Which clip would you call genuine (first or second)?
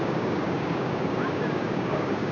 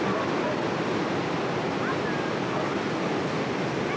second